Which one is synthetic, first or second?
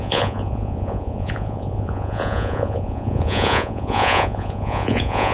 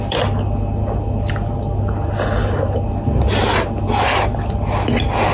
first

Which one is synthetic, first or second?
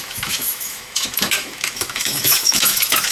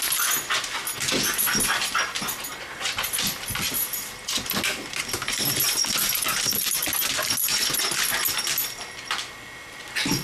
first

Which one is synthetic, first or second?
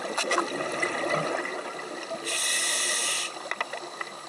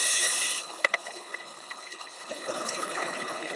second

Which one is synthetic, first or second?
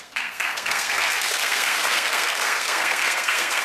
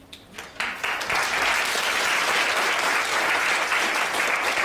first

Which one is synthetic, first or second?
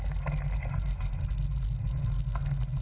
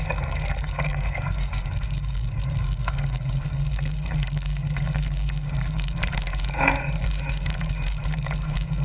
second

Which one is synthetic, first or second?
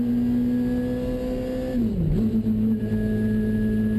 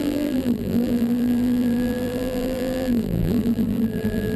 second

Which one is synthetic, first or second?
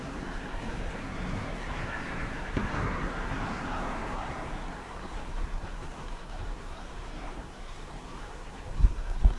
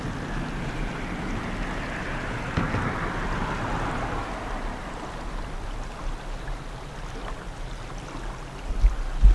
first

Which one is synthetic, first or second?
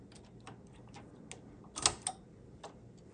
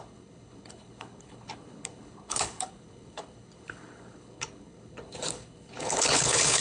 second